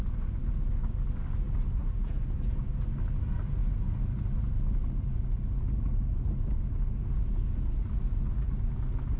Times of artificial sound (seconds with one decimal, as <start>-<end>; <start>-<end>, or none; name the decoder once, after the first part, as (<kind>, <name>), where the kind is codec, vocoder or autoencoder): 1.8-2.7 (vocoder, Vocos)